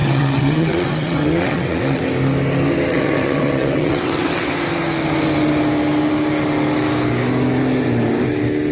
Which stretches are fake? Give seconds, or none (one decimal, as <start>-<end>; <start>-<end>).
0.0-2.0; 2.9-4.5